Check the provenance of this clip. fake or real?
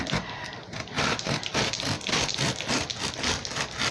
real